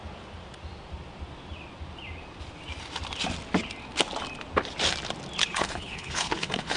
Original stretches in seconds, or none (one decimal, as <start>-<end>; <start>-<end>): 0.0-5.4